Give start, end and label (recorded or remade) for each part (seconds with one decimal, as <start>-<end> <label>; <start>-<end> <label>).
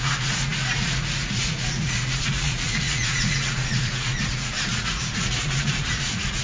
0.0-6.4 remade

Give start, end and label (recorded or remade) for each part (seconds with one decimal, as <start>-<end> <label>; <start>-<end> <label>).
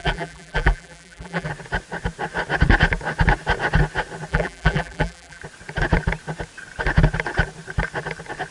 0.0-1.5 remade; 1.5-4.3 recorded; 4.3-5.4 remade; 5.4-8.5 recorded